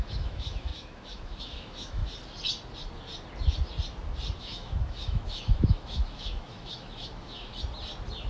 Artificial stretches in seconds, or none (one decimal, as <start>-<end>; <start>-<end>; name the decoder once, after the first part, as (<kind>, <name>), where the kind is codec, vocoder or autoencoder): 0.0-2.0 (autoencoder, DAC-VAE); 4.4-7.5